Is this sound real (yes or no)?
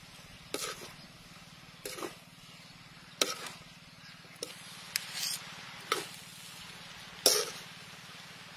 yes